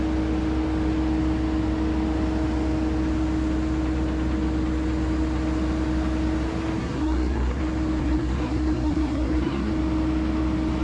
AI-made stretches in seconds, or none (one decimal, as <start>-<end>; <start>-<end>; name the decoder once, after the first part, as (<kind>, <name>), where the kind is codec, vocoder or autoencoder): 6.8-7.6 (codec, SNAC); 8.0-9.7